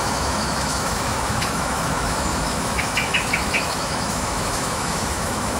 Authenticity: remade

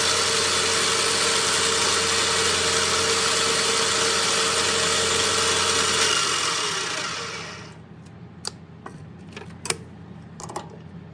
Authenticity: recorded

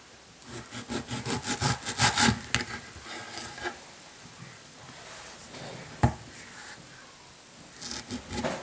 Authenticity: recorded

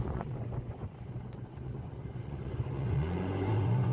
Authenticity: remade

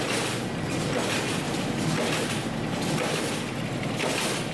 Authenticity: recorded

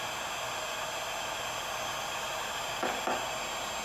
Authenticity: recorded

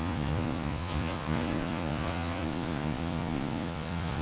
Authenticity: remade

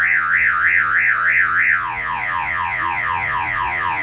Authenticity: remade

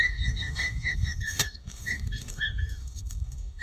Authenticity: remade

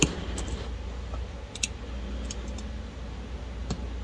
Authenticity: recorded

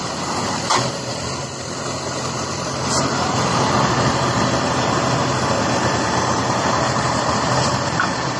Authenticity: remade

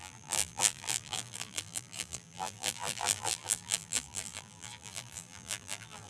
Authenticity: remade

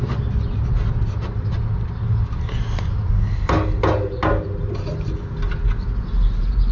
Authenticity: recorded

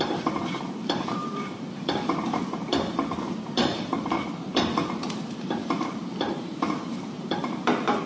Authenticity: remade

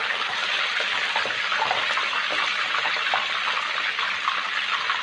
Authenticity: recorded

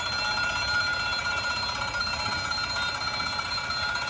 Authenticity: recorded